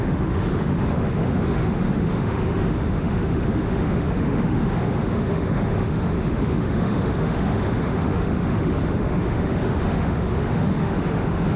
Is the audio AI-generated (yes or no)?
yes